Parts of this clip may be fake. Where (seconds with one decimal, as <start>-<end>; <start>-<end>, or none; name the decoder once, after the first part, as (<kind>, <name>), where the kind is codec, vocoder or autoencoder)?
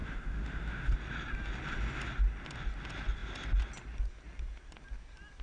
0.0-0.9 (autoencoder, DAC-VAE)